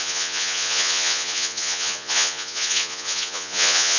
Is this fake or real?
fake